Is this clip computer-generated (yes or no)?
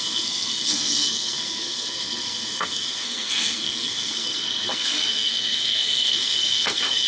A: yes